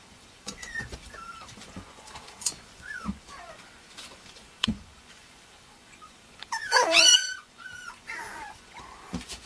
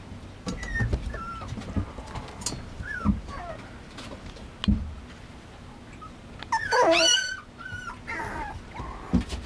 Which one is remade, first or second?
first